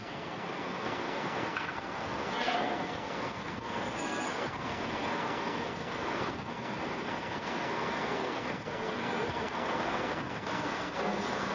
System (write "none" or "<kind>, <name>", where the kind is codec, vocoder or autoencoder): codec, SNAC